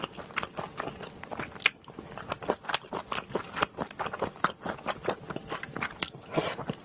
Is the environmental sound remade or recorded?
recorded